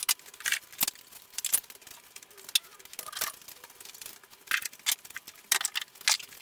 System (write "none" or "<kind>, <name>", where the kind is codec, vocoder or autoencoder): none